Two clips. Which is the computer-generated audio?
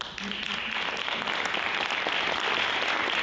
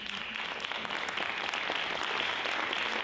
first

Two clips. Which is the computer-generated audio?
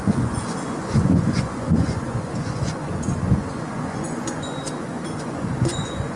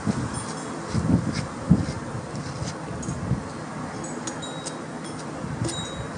first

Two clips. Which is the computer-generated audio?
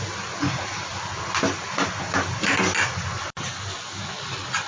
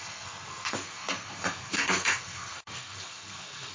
second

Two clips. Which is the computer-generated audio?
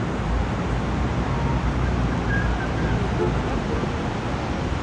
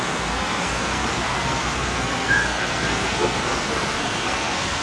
second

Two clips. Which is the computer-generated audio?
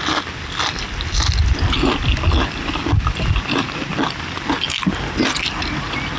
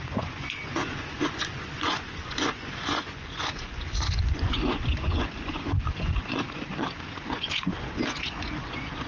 second